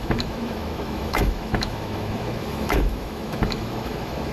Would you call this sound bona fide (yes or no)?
no